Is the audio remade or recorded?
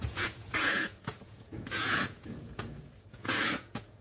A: remade